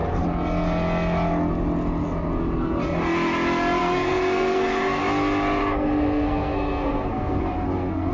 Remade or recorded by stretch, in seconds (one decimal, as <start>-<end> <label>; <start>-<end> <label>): 0.0-3.8 recorded; 3.8-5.0 remade; 5.0-5.6 recorded; 5.6-8.1 remade